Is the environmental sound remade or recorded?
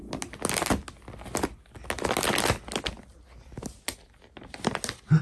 recorded